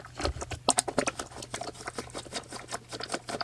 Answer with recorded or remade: recorded